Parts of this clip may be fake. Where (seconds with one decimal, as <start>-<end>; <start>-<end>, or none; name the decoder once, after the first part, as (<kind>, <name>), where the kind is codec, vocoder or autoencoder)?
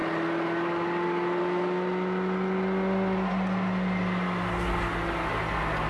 none